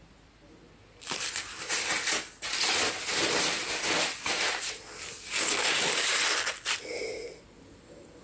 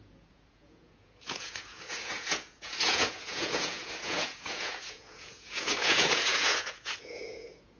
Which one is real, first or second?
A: first